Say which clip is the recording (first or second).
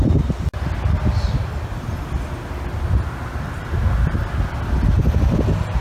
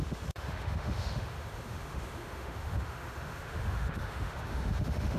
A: first